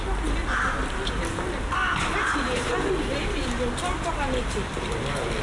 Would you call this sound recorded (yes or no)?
yes